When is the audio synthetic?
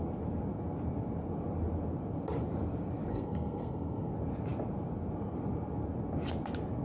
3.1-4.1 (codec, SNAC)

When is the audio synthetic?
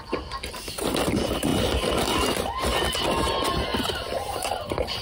3.7-4.5 (vocoder, BigVGAN v2)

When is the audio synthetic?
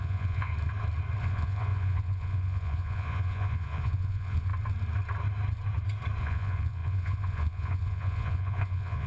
0.0-0.5 (vocoder, Vocos); 1.2-4.5; 6.2-9.1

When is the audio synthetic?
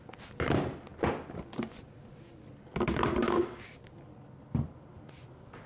3.2-3.7 (codec, DAC)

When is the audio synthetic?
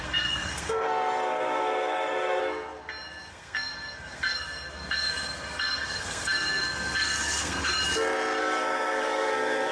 0.0-2.4 (codec, SNAC); 3.3-7.7; 8.4-9.7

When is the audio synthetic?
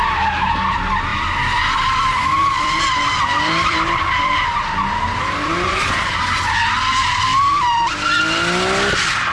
1.1-6.2 (vocoder, BigVGAN v2)